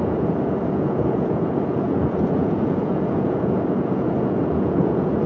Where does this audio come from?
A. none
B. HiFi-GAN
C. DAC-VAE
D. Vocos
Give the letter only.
D